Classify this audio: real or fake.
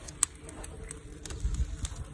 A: real